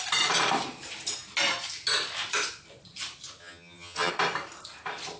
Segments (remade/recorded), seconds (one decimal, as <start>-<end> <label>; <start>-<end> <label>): 0.0-3.4 recorded; 3.4-4.1 remade; 4.1-5.2 recorded